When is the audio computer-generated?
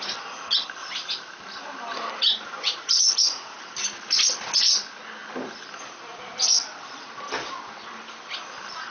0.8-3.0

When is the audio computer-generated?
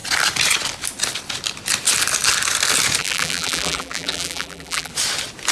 3.0-4.9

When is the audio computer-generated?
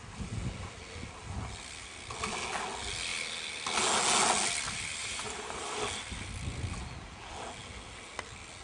5.0-5.8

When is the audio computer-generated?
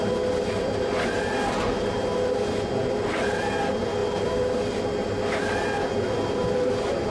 none